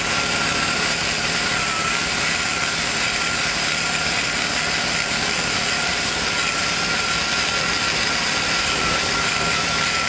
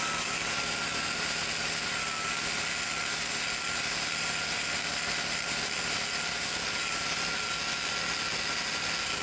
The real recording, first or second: second